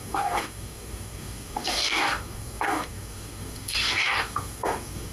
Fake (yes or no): yes